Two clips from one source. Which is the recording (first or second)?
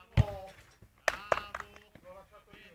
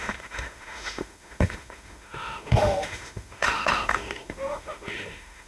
first